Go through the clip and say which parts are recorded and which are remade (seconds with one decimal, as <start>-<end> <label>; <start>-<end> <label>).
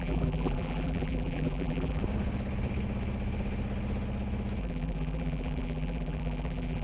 0.0-2.0 remade; 2.0-4.6 recorded; 4.6-6.8 remade